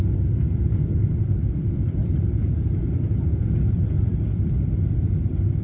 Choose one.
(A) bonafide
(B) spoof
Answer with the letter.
B